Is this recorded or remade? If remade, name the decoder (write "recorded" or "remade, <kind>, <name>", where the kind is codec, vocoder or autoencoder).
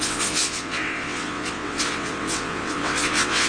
remade, vocoder, WaveNeXt